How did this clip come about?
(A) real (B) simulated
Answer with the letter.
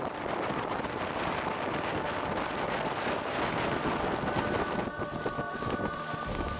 A